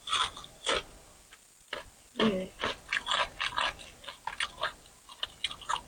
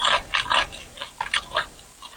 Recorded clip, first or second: first